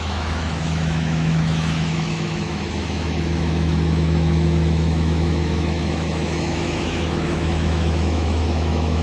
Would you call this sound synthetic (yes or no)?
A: yes